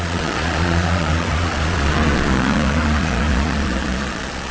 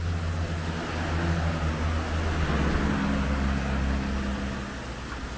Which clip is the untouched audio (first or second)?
second